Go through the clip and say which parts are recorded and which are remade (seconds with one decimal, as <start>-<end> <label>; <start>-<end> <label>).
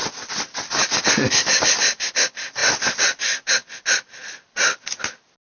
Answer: 0.0-5.4 recorded